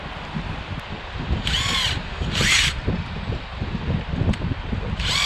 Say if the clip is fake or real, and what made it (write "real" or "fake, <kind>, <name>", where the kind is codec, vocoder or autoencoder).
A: real